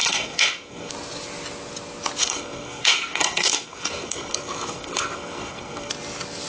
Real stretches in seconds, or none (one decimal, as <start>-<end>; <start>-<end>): 0.9-2.2; 5.9-6.5